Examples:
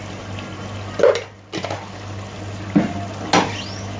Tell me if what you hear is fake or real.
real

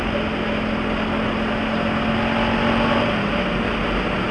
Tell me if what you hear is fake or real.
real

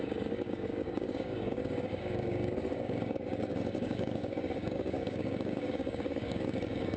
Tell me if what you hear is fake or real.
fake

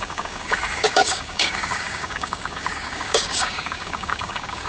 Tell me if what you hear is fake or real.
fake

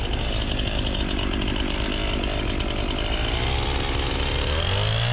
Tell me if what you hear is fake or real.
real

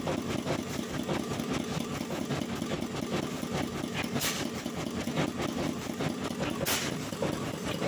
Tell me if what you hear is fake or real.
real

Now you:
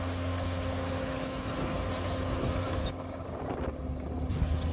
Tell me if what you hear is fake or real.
real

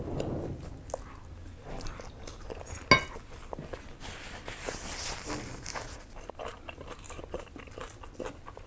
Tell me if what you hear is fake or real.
real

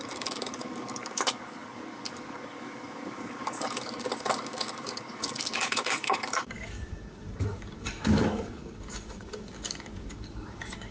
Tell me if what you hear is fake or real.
fake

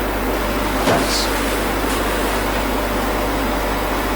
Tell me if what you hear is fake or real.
real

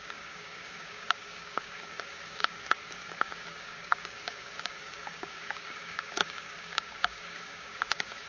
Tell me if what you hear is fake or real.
fake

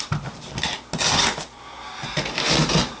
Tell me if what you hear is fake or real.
real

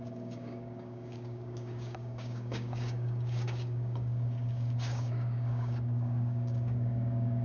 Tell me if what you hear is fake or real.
fake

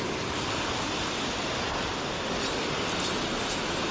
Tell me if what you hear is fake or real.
real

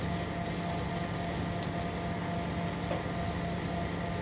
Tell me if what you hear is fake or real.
real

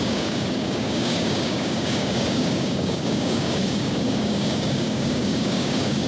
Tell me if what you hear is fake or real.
fake